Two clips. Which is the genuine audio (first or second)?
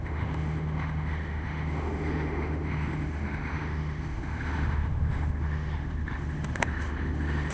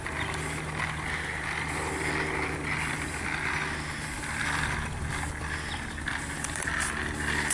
second